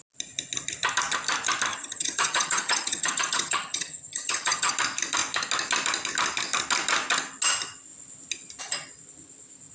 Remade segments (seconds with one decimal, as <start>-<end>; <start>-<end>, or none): 1.7-4.7